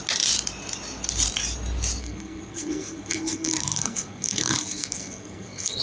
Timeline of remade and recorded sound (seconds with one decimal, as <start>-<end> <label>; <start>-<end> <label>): 0.0-2.0 recorded; 2.0-5.8 remade